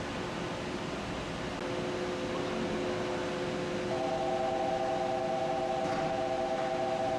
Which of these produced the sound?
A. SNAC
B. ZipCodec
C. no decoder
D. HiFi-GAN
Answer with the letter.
C